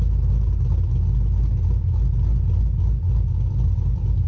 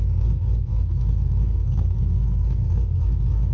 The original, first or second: first